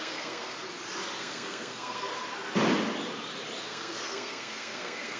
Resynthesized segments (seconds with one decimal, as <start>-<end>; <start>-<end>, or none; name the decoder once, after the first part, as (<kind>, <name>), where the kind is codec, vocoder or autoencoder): 0.0-0.6 (codec, SNAC); 1.2-2.1; 3.6-5.2